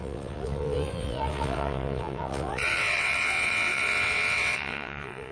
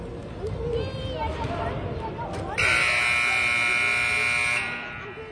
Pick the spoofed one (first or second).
first